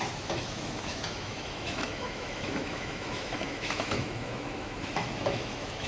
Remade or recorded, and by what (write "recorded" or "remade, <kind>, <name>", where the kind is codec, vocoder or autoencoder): remade, autoencoder, DAC-VAE